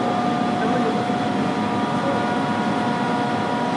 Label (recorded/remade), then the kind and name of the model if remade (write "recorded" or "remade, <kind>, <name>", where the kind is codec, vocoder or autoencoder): recorded